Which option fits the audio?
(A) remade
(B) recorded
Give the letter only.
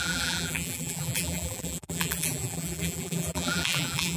A